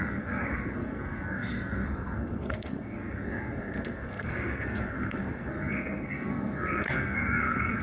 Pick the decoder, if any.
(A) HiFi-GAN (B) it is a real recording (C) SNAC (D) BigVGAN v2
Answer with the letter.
C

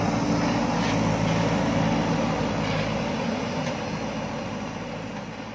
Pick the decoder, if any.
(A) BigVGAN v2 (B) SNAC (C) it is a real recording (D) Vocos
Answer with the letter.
C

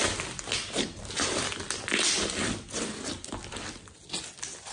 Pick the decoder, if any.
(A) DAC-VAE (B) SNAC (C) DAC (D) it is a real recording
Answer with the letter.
D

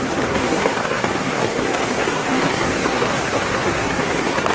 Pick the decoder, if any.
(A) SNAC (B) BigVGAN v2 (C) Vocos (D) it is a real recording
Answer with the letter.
A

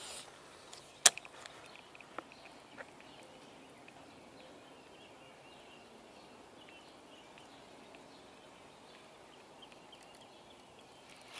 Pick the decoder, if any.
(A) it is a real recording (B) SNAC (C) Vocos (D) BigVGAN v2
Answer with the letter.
A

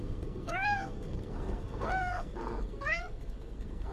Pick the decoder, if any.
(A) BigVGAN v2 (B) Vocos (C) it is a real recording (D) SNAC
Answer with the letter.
D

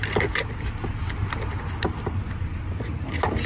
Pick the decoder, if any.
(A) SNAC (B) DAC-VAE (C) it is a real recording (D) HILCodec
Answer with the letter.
C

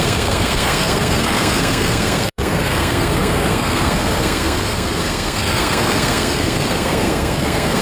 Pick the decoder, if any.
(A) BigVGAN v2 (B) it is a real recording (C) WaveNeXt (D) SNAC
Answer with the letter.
D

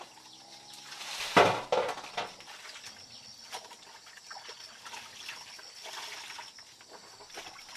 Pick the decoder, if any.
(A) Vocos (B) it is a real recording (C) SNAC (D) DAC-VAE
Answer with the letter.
B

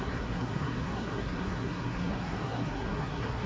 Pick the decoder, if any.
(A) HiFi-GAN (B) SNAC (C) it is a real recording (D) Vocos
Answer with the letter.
B